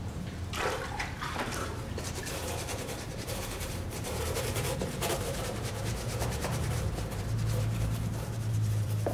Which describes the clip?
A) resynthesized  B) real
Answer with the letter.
A